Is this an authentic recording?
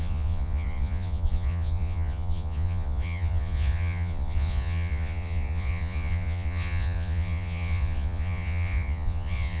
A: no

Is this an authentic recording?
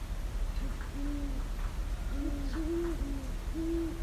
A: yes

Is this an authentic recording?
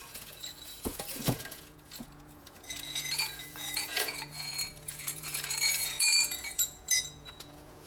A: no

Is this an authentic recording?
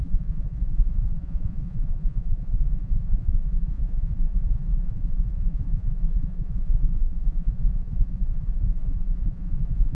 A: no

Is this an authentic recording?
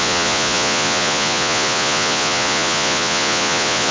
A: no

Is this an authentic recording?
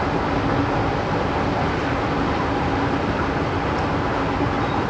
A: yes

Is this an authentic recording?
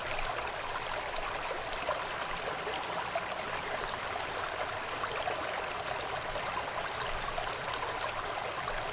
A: yes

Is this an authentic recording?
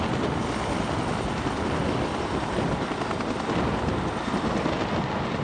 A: yes